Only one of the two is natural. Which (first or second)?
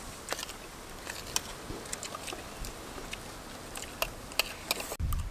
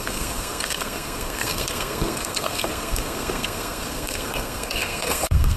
first